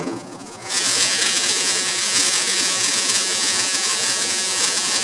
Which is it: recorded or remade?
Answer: remade